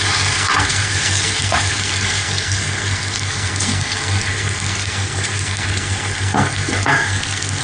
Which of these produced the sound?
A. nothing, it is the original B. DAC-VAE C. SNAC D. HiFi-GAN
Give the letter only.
C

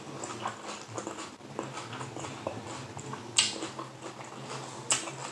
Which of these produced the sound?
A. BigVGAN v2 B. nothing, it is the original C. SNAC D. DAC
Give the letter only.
B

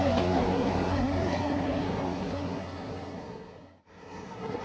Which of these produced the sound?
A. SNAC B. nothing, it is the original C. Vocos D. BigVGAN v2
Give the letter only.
A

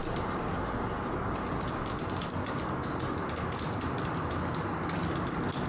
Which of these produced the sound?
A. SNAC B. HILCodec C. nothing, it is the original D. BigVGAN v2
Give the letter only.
C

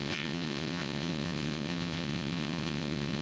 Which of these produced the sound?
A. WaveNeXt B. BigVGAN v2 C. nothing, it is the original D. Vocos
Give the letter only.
A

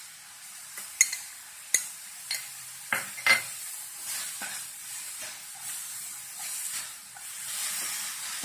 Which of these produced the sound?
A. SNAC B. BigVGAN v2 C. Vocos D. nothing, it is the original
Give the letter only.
D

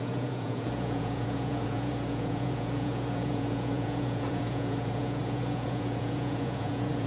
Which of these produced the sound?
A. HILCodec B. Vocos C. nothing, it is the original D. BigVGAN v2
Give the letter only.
B